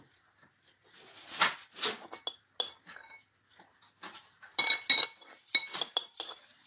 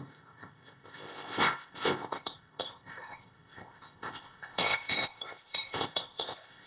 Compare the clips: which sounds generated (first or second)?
second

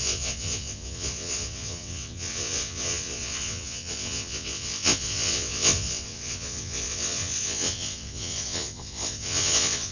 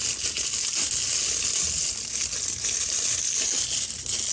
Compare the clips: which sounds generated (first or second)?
first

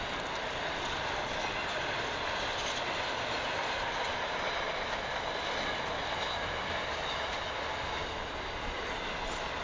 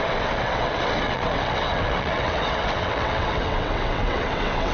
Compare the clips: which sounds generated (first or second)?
second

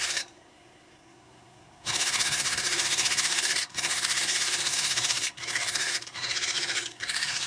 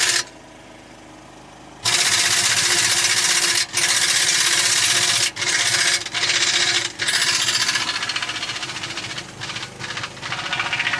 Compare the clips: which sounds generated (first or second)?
first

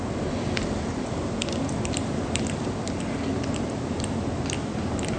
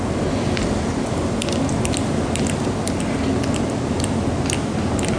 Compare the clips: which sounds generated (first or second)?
first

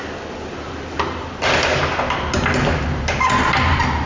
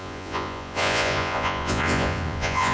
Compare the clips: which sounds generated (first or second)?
second